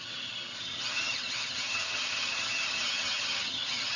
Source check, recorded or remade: remade